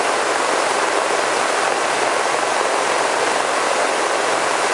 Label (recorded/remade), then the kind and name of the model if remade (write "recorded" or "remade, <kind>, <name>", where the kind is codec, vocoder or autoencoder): recorded